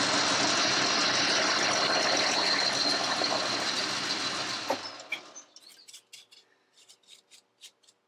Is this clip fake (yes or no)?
no